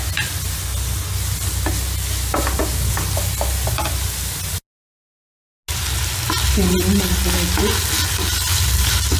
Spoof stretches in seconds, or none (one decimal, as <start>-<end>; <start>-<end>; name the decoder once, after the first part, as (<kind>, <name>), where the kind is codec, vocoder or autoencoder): none